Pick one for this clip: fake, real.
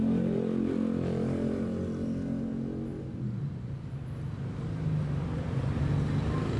real